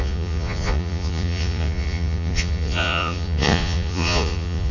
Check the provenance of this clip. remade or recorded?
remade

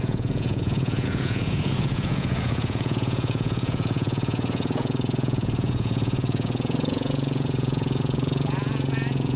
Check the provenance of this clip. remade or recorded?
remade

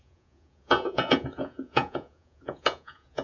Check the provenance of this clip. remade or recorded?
remade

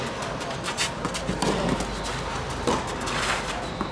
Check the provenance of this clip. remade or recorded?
recorded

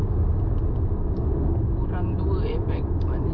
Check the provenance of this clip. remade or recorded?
recorded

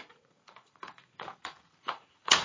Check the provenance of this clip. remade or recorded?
remade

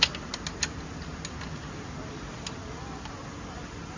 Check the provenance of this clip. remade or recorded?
recorded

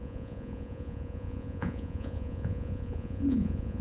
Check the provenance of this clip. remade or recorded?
remade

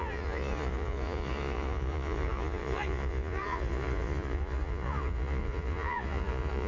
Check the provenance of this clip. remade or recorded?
remade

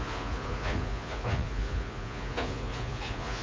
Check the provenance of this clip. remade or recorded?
remade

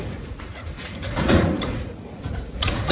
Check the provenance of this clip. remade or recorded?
remade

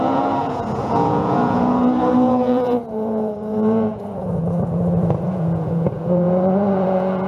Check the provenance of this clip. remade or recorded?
remade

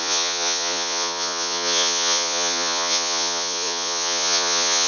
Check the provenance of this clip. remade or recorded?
remade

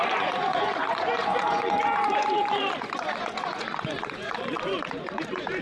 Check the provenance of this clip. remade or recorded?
remade